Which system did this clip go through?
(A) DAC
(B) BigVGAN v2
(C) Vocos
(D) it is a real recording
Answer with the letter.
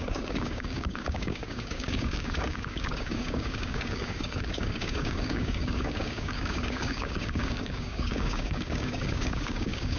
A